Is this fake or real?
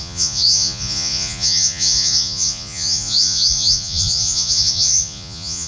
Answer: fake